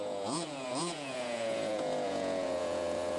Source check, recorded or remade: remade